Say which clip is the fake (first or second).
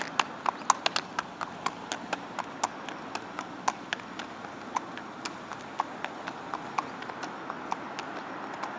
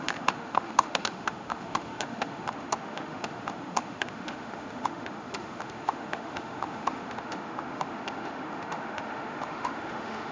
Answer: second